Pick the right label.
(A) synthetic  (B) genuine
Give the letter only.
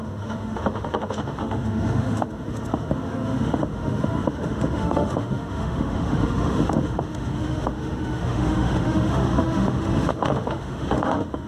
A